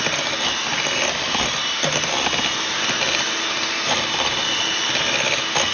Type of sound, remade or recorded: recorded